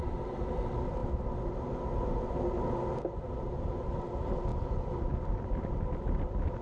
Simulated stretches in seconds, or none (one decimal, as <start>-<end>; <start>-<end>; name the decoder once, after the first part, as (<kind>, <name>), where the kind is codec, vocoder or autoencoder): none